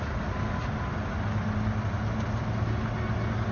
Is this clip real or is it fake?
real